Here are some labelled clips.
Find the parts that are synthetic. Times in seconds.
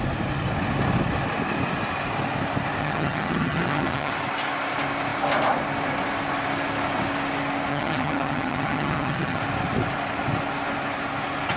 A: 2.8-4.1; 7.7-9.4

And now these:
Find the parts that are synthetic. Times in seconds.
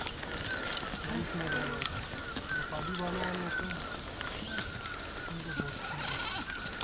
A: none